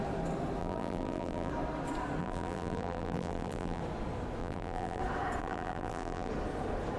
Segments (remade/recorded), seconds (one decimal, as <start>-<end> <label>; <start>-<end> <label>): 0.0-0.6 recorded; 0.6-1.5 remade; 1.5-2.2 recorded; 2.2-3.8 remade; 3.8-4.4 recorded; 4.4-5.0 remade; 5.0-5.4 recorded; 5.4-6.3 remade; 6.3-7.0 recorded